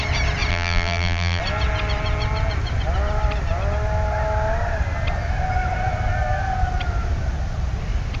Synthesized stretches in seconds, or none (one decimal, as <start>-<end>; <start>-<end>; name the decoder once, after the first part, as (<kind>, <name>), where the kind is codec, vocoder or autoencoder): 0.5-1.4 (vocoder, BigVGAN v2)

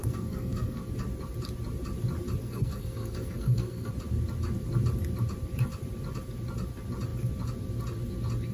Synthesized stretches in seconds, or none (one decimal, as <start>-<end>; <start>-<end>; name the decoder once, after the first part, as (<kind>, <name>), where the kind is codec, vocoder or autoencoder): 0.0-0.8 (codec, SNAC); 2.4-3.9

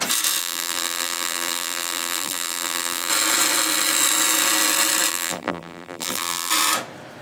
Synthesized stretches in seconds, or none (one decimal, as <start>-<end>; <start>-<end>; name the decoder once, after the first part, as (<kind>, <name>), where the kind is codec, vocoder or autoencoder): 0.4-3.1 (vocoder, BigVGAN v2); 5.1-6.5